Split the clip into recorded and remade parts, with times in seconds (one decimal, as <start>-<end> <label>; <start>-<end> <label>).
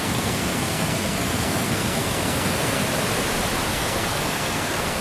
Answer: 0.0-2.8 remade; 2.8-3.7 recorded; 3.7-5.0 remade